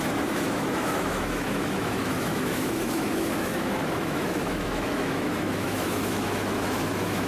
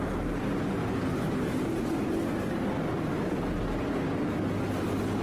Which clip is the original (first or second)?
second